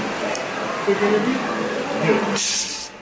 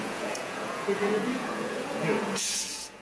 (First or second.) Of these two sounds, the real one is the first